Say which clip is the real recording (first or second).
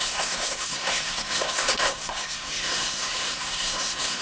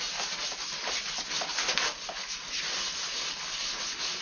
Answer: second